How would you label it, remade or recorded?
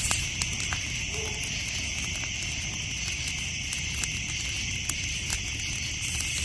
recorded